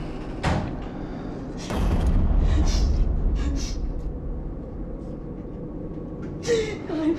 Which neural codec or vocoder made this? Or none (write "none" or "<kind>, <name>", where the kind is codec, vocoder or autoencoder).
none